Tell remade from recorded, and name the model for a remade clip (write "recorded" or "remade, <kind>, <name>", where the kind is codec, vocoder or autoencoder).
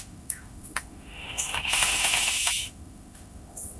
remade, autoencoder, DAC-VAE